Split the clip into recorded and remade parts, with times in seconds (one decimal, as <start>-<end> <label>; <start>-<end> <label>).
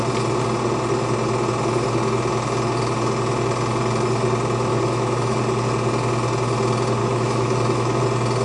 0.0-4.7 recorded; 4.7-5.4 remade; 5.4-7.0 recorded; 7.0-8.0 remade; 8.0-8.4 recorded